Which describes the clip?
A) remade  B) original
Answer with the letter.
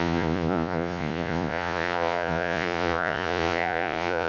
A